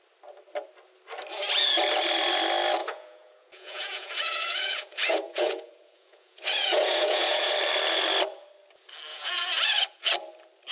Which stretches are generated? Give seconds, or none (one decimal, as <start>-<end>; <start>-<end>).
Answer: 2.8-7.5; 9.1-10.1